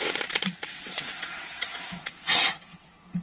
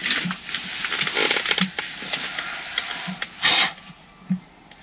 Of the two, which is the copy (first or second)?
first